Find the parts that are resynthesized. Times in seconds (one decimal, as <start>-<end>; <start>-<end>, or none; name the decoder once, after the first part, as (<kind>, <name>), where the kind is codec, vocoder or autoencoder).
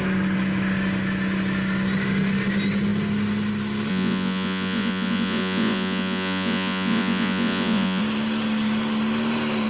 3.9-8.0 (vocoder, Vocos)